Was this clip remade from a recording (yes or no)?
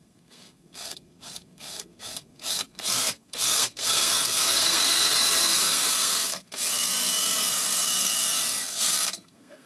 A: yes